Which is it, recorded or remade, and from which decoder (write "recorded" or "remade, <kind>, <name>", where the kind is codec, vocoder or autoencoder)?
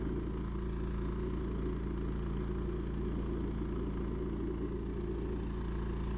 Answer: recorded